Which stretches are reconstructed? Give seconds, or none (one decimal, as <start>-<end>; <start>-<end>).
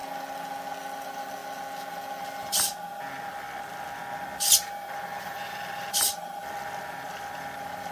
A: 0.8-1.4; 5.2-7.9